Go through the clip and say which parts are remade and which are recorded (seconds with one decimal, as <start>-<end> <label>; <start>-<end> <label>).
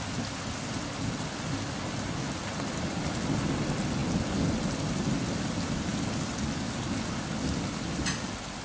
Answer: 0.0-8.6 recorded